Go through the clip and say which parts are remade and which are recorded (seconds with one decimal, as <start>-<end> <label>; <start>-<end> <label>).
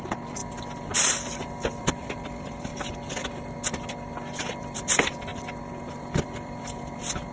0.0-0.4 remade; 0.4-1.8 recorded; 1.8-2.7 remade; 2.7-4.6 recorded; 4.6-5.3 remade; 5.3-5.9 recorded; 5.9-7.3 remade